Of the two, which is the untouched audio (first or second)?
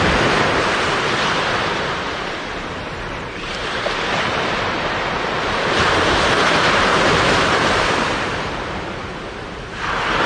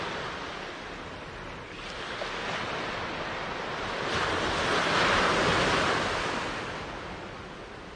second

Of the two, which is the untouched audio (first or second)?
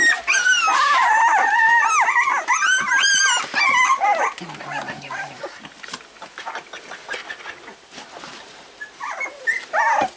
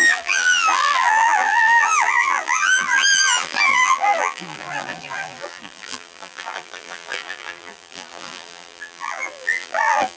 first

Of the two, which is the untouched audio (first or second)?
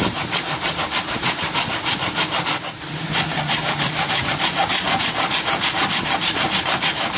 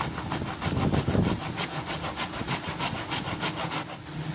second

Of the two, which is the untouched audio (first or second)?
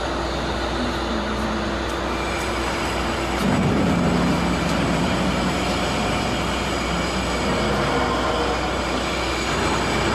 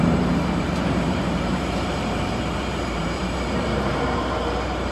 first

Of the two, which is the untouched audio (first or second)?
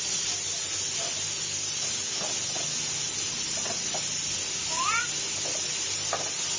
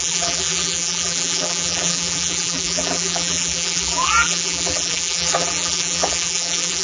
first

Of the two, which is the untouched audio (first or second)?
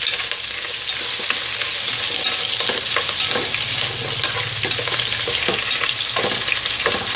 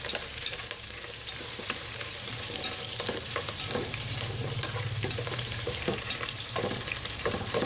first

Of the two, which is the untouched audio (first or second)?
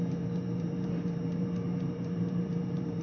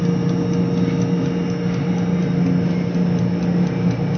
second